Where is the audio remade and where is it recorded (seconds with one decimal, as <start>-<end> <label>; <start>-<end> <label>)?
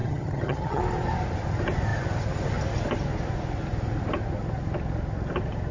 0.0-0.8 remade; 0.8-5.7 recorded